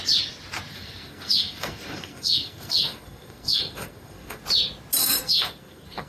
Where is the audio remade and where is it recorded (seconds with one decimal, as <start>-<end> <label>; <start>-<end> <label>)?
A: 0.0-0.7 recorded; 0.7-4.4 remade; 4.4-5.0 recorded; 5.0-6.1 remade